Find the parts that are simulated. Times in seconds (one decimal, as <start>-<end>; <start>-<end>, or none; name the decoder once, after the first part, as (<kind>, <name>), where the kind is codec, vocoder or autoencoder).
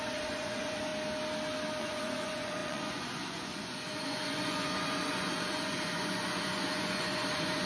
0.0-0.9 (vocoder, Vocos); 1.8-7.7